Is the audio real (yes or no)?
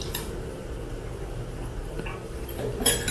yes